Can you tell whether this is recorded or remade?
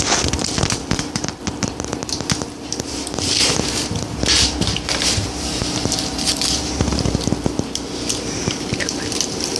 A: remade